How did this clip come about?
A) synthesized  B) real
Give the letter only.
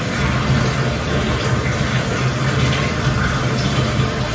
B